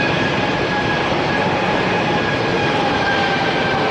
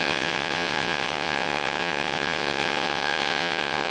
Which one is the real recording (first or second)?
first